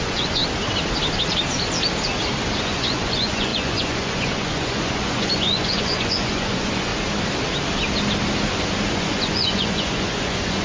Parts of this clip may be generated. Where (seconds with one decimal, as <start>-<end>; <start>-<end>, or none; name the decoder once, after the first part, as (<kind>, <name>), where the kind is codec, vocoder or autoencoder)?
0.0-0.4 (vocoder, Vocos); 2.6-6.9; 8.9-10.6